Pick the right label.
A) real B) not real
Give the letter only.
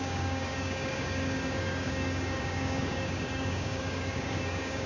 B